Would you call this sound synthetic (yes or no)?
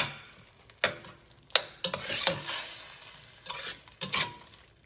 no